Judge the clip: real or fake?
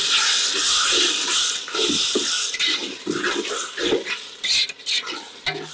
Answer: real